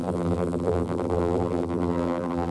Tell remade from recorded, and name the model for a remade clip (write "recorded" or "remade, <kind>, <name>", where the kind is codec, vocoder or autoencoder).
remade, vocoder, BigVGAN v2